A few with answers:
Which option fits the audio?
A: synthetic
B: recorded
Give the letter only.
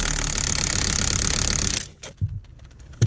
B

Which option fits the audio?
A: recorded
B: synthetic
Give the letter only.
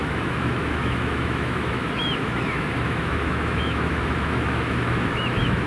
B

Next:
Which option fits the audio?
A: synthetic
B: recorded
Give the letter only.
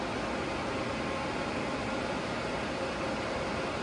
B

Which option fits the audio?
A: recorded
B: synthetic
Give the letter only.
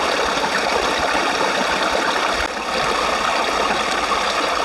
A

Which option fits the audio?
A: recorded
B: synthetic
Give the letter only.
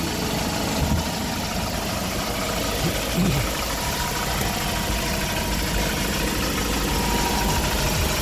A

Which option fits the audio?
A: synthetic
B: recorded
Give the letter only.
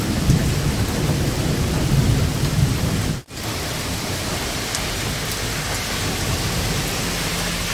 B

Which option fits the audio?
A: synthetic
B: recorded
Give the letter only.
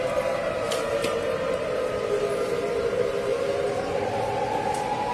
B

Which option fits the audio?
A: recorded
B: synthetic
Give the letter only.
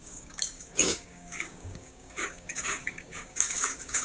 B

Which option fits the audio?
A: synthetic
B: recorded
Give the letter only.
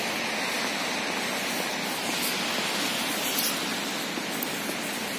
B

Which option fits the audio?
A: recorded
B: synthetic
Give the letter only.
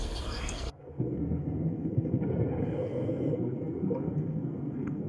B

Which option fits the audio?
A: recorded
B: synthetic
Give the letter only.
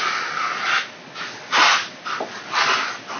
A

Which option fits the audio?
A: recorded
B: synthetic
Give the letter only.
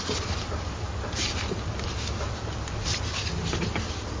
B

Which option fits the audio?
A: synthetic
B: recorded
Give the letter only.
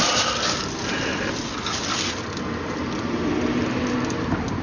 B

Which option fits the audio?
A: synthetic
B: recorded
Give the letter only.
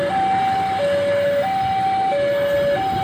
B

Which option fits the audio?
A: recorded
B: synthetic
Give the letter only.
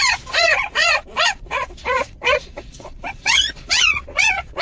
B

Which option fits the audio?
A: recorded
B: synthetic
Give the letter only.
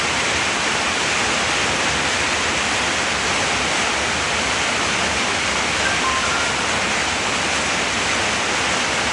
A